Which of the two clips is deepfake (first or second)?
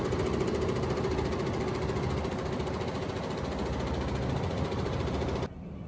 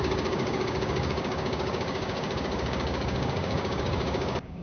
second